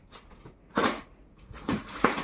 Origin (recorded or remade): remade